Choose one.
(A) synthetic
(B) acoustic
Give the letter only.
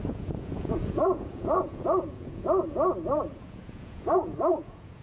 A